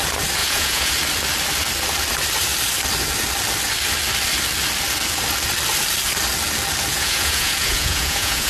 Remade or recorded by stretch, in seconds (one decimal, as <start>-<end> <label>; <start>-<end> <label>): 0.0-0.4 recorded; 0.4-0.9 remade; 0.9-6.9 recorded; 6.9-8.5 remade